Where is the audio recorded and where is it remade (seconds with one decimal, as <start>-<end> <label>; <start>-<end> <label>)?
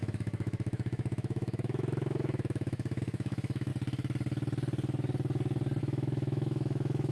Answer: 0.0-3.7 remade; 3.7-5.8 recorded; 5.8-7.1 remade